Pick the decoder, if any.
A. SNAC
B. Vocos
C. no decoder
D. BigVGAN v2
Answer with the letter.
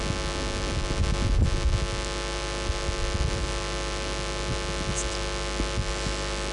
C